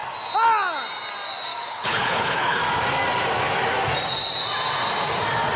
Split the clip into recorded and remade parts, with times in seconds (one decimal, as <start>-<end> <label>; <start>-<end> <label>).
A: 0.0-1.7 recorded; 1.7-2.6 remade; 2.6-5.6 recorded